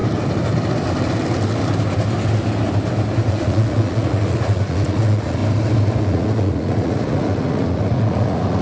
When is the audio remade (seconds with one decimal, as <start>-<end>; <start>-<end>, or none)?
3.3-5.4; 6.0-8.6